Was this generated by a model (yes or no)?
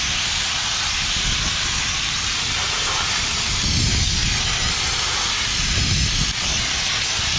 no